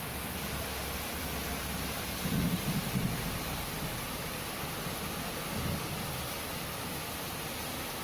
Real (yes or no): yes